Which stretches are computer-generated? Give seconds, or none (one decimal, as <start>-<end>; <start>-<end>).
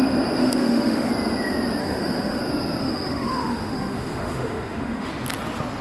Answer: 0.4-1.1; 1.8-2.4; 2.8-5.1